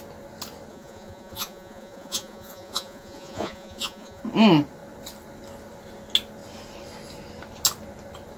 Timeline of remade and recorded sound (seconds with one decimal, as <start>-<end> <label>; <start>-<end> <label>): 0.0-0.7 recorded; 0.7-4.2 remade; 4.2-8.4 recorded